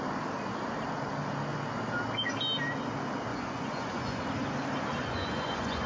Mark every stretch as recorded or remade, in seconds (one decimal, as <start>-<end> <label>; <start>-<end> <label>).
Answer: 0.0-3.3 recorded; 3.3-4.2 remade; 4.2-5.0 recorded; 5.0-5.9 remade